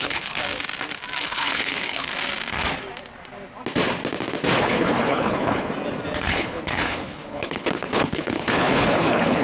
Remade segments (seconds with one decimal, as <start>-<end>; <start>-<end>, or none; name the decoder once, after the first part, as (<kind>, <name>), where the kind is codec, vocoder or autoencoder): 0.0-0.4 (codec, HILCodec); 1.2-2.1; 4.6-5.7; 6.3-9.4